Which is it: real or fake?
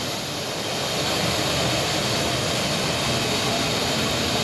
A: real